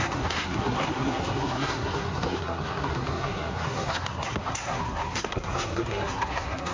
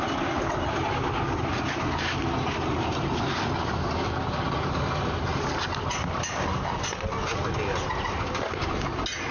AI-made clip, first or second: first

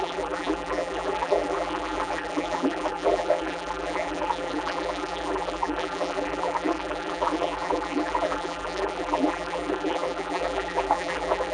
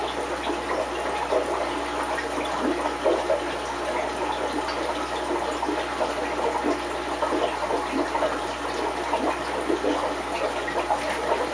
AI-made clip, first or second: first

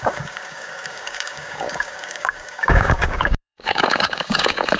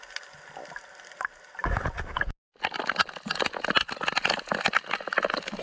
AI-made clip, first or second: first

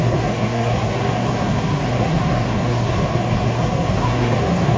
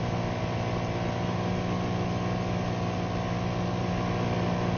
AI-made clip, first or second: first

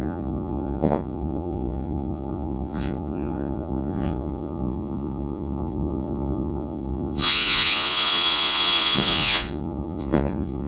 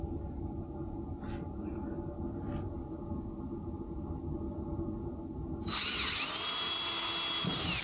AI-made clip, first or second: first